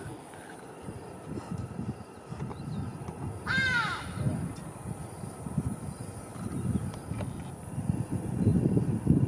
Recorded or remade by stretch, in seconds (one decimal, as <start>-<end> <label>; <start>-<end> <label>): 0.0-9.3 recorded